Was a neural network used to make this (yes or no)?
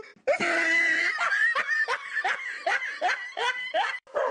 no